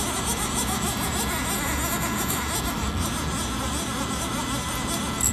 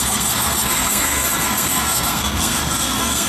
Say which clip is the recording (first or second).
first